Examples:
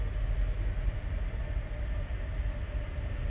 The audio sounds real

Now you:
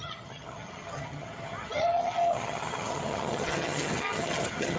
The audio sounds fake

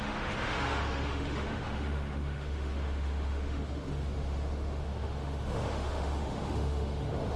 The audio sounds fake